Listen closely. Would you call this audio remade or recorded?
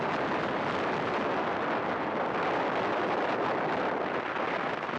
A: recorded